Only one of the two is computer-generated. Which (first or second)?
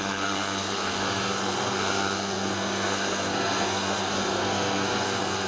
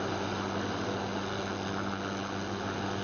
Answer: first